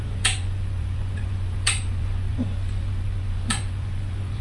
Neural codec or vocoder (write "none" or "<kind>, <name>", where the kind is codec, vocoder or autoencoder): vocoder, Vocos